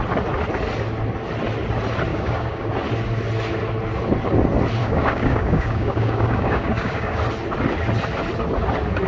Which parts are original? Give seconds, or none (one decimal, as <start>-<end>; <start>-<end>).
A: 0.0-2.1; 2.7-4.8; 7.2-9.1